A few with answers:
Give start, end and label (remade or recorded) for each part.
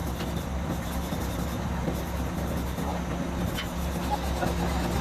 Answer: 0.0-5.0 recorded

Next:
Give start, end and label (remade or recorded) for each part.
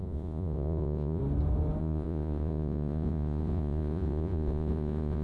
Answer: 0.0-1.2 remade; 1.2-1.8 recorded; 1.8-5.2 remade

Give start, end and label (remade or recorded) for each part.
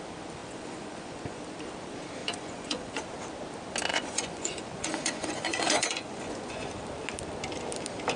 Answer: 0.0-0.4 recorded; 0.4-1.4 remade; 1.4-2.2 recorded; 2.2-3.0 remade; 3.0-3.9 recorded; 3.9-6.7 remade; 6.7-8.2 recorded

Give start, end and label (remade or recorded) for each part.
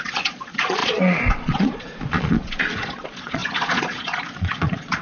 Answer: 0.0-5.0 remade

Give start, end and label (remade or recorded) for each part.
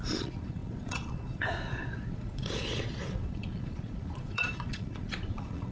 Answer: 0.0-5.7 remade